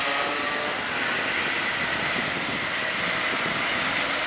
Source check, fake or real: real